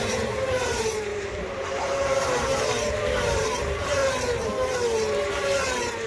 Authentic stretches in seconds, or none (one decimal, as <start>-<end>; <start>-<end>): 4.0-5.3